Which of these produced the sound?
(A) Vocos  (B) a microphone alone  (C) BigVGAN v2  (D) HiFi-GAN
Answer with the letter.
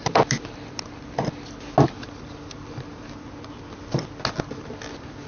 B